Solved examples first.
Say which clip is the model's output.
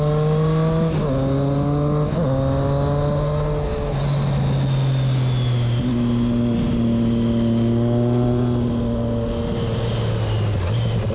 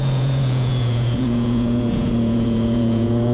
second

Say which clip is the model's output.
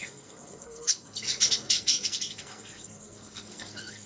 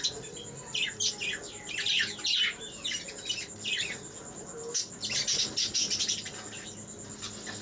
first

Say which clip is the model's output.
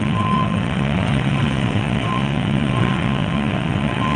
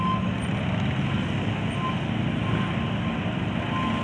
first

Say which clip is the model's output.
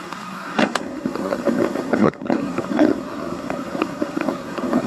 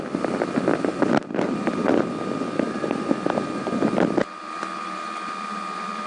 first